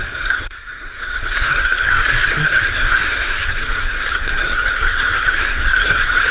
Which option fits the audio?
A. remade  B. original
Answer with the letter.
A